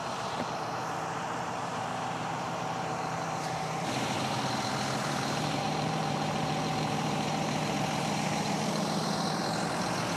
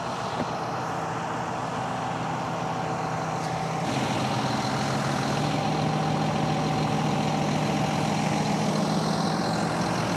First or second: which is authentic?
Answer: second